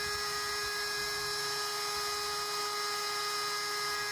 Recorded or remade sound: recorded